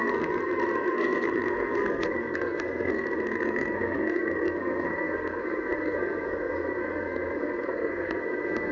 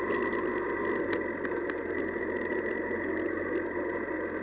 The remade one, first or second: first